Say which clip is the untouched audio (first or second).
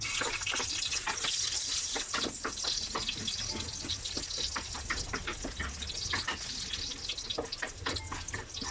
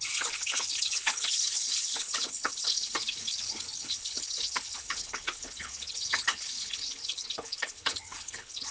first